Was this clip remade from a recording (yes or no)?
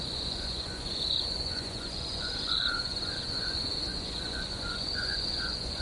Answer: yes